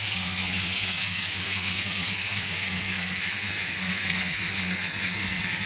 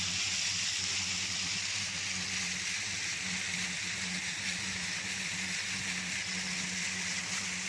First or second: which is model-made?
first